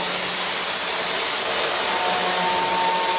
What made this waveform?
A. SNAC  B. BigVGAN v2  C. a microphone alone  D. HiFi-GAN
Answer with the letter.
C